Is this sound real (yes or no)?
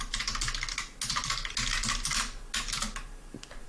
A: yes